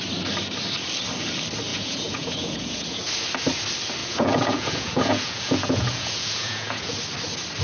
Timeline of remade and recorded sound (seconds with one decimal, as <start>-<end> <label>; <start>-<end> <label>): 0.0-1.7 recorded; 1.7-3.0 remade; 3.0-4.0 recorded; 4.0-7.0 remade; 7.0-7.6 recorded